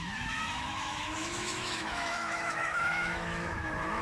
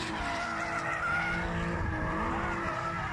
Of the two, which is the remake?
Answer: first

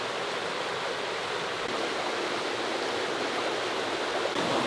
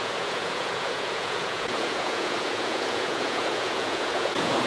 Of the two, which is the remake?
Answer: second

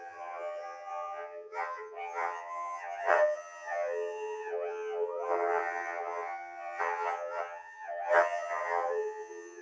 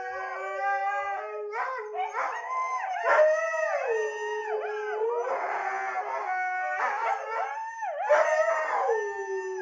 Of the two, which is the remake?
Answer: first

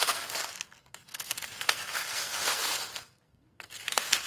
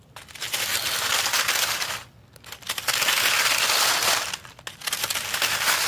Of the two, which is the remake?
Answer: first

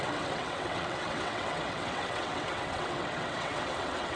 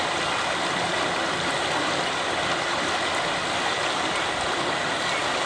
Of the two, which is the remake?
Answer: first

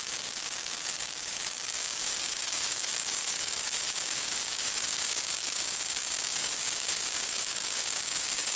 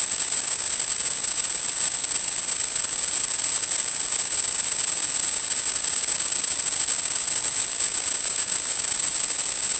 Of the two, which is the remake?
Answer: first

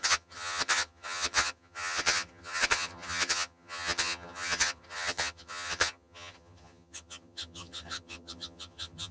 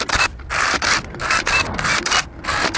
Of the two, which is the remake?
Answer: first